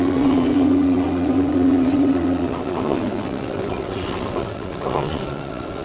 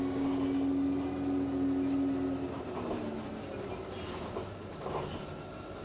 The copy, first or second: first